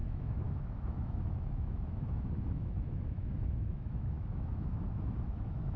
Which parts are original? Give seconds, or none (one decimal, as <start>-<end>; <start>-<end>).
none